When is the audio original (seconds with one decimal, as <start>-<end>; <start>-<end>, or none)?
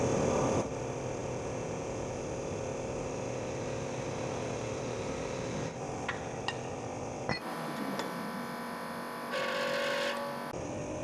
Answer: 0.0-1.2; 2.2-11.0